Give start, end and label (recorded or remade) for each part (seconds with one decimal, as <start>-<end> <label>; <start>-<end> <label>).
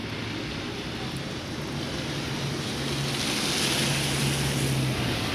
0.0-5.3 recorded